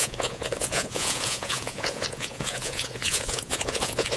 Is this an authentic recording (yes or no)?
no